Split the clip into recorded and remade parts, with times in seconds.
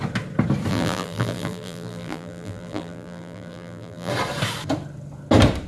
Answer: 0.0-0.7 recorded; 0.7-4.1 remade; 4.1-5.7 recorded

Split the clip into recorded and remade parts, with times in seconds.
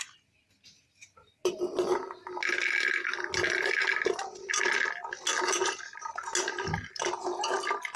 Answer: 0.0-8.0 recorded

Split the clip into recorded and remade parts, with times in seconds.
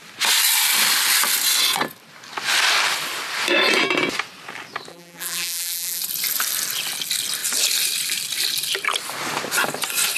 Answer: 0.0-4.9 recorded; 4.9-6.0 remade; 6.0-10.2 recorded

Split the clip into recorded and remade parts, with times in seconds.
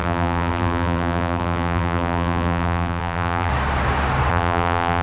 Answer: 0.0-3.5 remade; 3.5-4.3 recorded; 4.3-5.0 remade